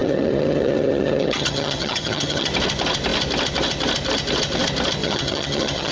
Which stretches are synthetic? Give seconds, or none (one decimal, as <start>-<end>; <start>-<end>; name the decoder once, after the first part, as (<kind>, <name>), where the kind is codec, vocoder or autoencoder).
0.0-2.5 (vocoder, HiFi-GAN); 5.0-5.9